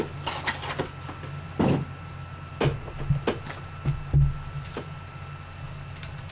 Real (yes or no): yes